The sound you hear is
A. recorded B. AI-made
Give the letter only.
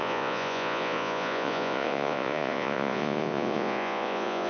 B